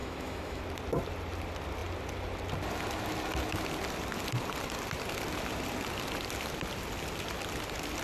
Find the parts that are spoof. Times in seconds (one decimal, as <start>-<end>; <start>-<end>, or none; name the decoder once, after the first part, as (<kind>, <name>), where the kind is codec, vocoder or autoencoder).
0.0-0.6 (autoencoder, DAC-VAE)